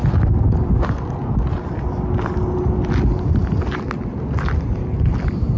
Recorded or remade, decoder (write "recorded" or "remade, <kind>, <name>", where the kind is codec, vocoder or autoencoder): recorded